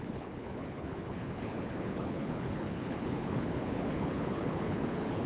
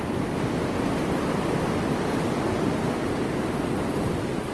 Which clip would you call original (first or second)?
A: second